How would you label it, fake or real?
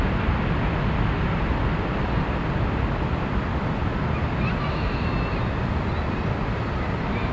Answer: real